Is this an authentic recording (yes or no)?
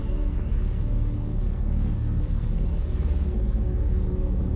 no